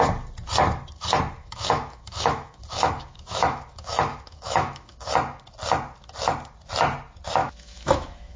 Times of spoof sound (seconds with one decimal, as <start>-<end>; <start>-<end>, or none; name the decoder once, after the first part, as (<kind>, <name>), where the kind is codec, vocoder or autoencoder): 1.4-5.1 (autoencoder, DAC-VAE); 7.4-8.4